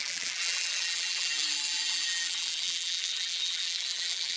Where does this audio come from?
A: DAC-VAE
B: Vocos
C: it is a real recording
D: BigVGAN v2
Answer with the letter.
D